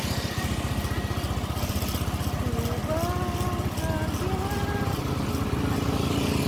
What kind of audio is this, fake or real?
real